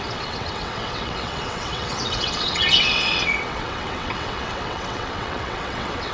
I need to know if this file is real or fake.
fake